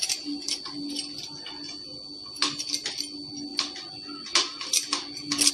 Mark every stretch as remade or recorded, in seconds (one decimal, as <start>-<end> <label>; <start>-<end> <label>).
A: 0.0-5.5 recorded